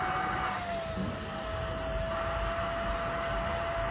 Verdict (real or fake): real